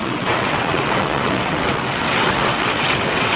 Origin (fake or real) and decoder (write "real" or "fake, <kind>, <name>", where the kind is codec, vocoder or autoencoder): fake, vocoder, WaveNeXt